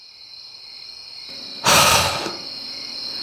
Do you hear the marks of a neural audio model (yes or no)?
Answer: no